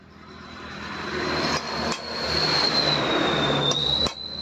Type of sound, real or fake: fake